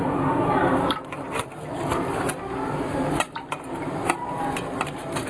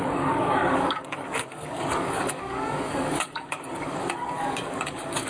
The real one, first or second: first